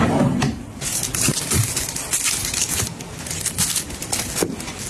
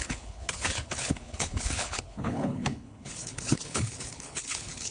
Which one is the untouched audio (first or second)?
first